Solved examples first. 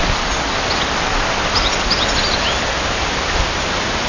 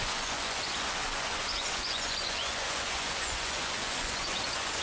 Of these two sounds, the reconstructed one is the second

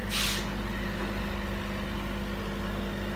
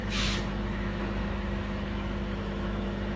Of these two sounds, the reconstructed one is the second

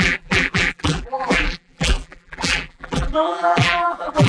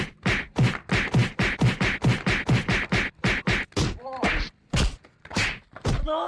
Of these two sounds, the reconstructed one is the first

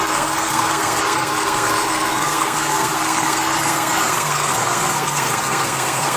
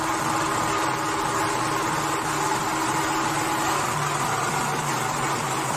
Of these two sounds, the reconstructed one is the first